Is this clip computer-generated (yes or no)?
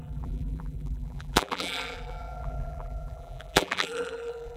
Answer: yes